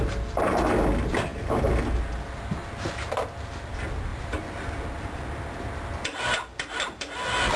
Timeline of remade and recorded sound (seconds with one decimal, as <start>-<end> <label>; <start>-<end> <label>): 0.0-7.6 recorded